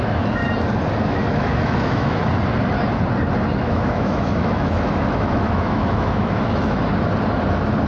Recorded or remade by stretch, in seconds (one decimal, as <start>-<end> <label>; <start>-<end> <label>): 0.0-0.4 remade; 0.4-1.0 recorded; 1.0-2.2 remade; 2.2-3.6 recorded; 3.6-6.8 remade; 6.8-7.9 recorded